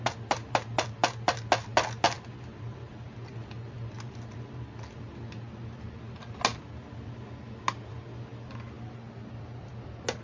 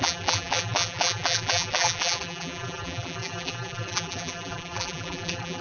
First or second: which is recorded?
first